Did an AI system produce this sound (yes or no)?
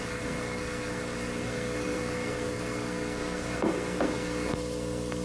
yes